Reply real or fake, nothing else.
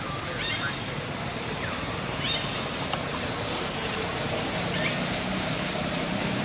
fake